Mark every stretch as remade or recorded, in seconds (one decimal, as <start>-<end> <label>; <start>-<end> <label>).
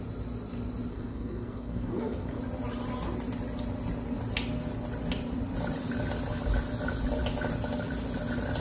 0.0-0.9 recorded; 0.9-2.4 remade; 2.4-8.6 recorded